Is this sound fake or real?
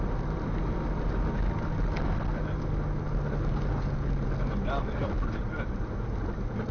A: real